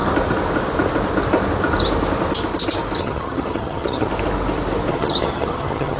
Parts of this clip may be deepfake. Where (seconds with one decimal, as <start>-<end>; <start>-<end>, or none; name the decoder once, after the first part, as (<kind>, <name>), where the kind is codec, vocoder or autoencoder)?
3.0-4.1 (vocoder, HiFi-GAN); 4.9-6.0